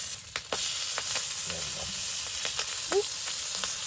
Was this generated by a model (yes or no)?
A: no